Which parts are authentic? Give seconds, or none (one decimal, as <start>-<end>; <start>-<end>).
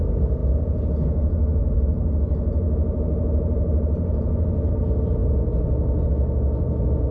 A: 0.0-7.1